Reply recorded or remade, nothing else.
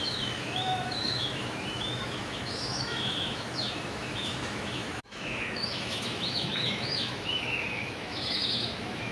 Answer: remade